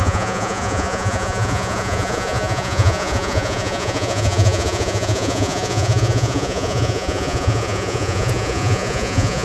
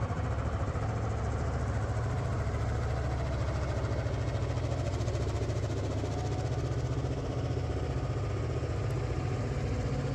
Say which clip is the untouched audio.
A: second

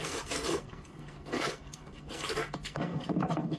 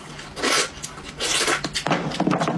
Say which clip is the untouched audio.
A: second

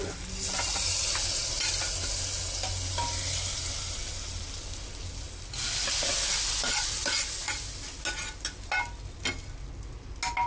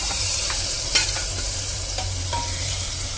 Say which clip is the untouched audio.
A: first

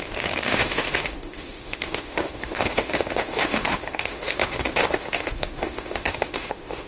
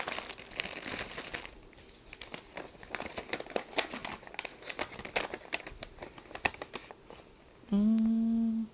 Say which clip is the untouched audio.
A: second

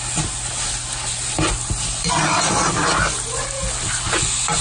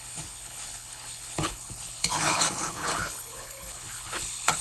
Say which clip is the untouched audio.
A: first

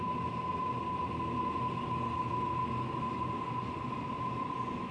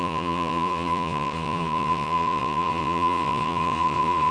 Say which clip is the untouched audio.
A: first